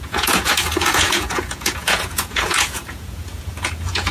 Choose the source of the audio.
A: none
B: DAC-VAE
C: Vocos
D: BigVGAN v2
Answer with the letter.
C